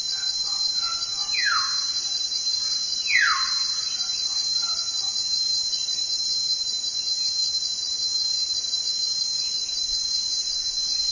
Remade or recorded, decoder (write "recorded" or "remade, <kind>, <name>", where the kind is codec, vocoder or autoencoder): recorded